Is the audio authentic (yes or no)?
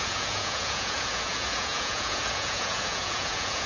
no